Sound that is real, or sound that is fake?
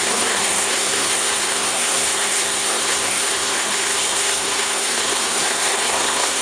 fake